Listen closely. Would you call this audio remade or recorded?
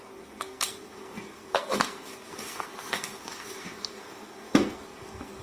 remade